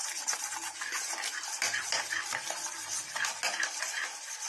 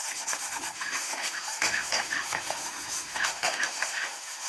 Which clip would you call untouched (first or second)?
first